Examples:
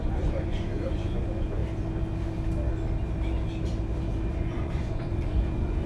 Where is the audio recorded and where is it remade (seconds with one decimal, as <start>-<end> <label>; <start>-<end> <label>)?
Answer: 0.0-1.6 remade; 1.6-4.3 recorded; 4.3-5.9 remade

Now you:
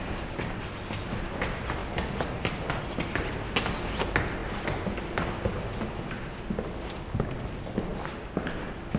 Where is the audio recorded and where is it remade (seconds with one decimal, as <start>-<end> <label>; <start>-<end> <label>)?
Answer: 0.0-9.0 recorded

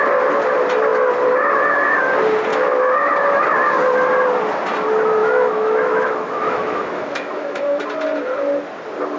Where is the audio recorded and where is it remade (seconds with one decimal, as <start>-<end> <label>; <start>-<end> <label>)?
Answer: 0.0-2.5 recorded; 2.5-3.0 remade; 3.0-5.2 recorded; 5.2-7.8 remade; 7.8-9.2 recorded